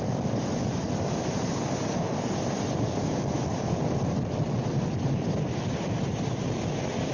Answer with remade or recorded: recorded